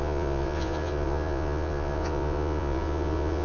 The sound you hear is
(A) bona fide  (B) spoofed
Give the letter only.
B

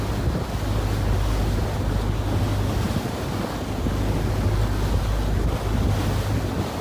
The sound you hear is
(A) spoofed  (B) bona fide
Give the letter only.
B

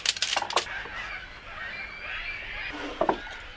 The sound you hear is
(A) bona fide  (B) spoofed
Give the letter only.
A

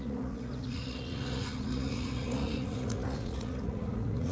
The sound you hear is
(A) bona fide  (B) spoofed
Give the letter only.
B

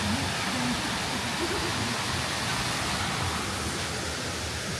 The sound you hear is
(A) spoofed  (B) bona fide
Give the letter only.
B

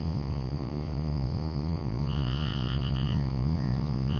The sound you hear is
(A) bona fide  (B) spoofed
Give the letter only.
B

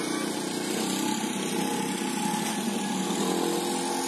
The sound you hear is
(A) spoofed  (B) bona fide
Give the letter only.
B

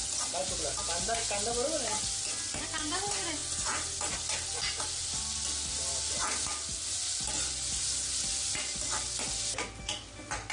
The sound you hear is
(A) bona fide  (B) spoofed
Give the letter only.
A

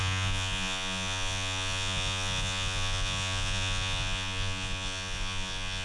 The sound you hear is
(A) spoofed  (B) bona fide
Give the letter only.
A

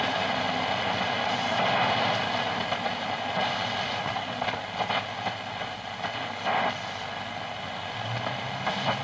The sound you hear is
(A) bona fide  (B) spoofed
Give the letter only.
A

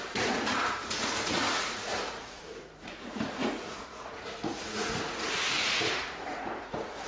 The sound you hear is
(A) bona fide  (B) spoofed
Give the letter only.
B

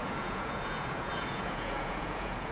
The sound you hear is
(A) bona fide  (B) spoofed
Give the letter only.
B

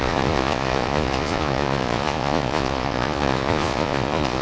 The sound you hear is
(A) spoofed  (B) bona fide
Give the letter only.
A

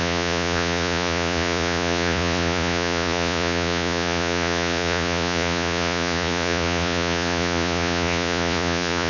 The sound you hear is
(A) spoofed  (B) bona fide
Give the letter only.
A